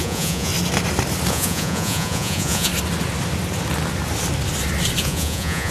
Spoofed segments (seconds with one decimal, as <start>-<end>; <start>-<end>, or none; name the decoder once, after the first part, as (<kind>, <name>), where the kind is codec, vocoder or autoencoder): 0.0-0.5 (vocoder, Vocos); 1.3-2.7; 5.0-5.7